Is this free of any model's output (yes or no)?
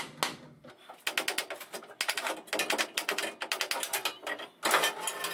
yes